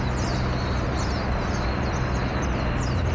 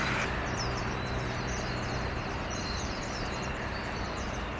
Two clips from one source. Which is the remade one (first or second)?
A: second